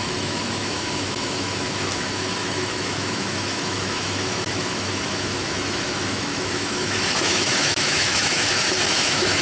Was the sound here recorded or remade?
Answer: remade